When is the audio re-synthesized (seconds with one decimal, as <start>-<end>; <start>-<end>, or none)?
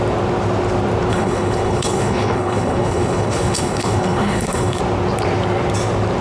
1.1-4.8